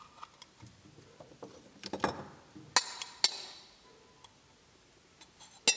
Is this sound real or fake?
real